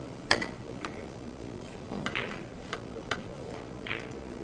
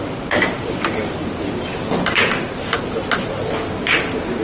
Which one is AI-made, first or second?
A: first